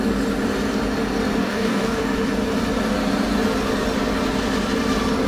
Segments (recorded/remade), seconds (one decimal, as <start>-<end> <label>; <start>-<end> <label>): 0.0-1.4 recorded; 1.4-2.0 remade; 2.0-5.3 recorded